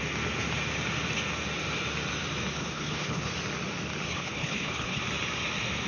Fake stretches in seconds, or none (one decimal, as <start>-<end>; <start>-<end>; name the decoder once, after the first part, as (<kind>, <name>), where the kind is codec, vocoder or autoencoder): 2.5-3.3 (codec, HILCodec); 4.1-5.0